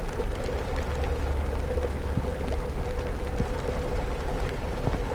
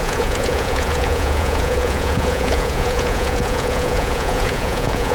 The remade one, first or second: second